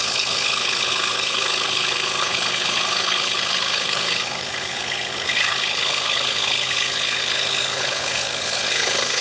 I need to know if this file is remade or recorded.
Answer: remade